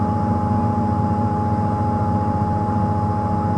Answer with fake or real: real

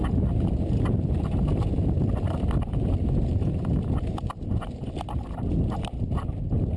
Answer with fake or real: real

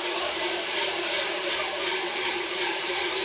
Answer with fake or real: fake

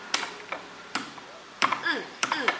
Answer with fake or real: fake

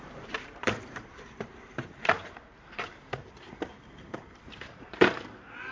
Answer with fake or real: fake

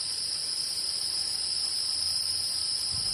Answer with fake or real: fake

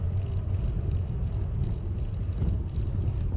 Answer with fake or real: real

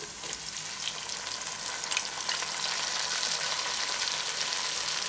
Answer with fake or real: real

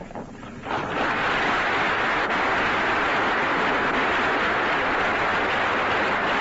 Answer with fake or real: real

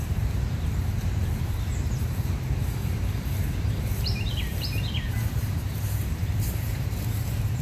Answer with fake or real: fake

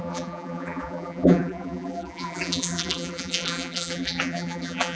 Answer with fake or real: fake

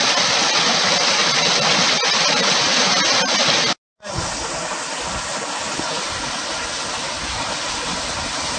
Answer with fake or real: real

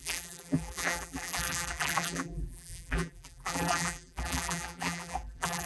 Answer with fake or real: fake